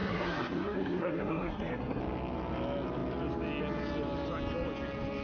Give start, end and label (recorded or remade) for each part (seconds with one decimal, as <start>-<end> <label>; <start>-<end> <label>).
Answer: 0.0-2.0 remade; 2.0-5.2 recorded